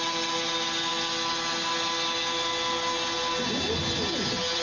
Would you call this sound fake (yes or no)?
no